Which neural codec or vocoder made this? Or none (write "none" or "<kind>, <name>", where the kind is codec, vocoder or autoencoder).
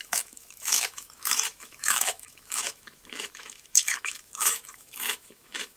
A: autoencoder, DAC-VAE